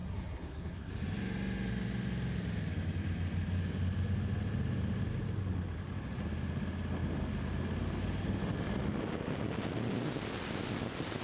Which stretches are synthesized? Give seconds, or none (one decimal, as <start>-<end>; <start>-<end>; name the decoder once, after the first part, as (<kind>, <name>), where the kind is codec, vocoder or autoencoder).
0.0-0.9 (codec, SNAC)